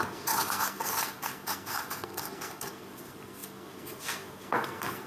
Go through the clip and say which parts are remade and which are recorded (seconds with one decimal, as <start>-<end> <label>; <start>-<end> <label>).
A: 0.0-5.1 remade